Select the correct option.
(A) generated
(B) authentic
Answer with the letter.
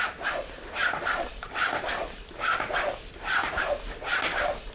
B